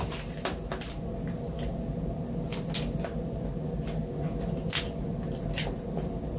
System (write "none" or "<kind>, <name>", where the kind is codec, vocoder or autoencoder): none